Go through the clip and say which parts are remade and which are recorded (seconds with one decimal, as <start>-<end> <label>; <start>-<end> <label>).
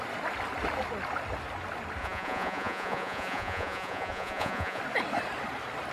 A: 0.0-2.0 recorded; 2.0-4.8 remade; 4.8-5.9 recorded